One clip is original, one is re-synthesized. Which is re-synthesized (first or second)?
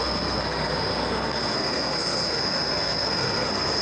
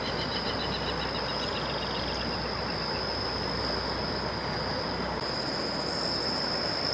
first